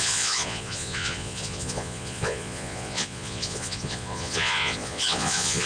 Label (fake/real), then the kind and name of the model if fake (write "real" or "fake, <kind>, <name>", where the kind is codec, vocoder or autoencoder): fake, vocoder, Vocos